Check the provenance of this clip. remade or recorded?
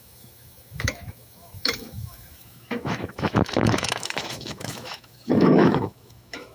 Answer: remade